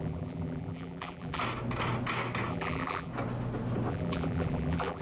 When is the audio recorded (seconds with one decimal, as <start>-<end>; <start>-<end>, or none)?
1.4-2.5; 3.1-3.9